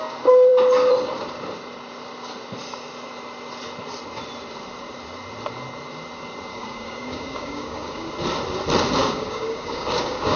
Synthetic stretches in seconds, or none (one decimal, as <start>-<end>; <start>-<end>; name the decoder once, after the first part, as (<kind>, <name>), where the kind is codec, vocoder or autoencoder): 6.5-8.1 (codec, DAC); 9.0-10.4